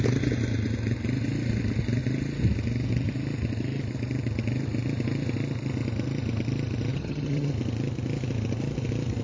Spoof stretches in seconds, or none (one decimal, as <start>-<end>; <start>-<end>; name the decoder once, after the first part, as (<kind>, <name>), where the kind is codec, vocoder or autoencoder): 6.9-7.5 (vocoder, HiFi-GAN)

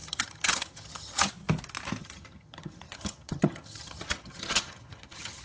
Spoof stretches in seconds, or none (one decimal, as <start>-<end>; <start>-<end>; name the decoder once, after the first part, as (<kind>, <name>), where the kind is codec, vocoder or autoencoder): 0.0-1.3 (vocoder, HiFi-GAN); 2.0-5.4

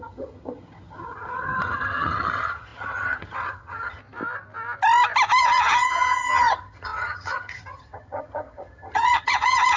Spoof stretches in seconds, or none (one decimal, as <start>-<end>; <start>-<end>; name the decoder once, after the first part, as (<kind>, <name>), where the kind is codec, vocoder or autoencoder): 0.0-4.0 (vocoder, HiFi-GAN); 5.4-9.8